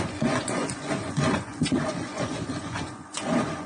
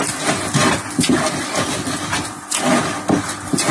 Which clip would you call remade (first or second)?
first